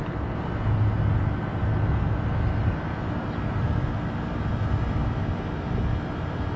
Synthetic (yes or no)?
no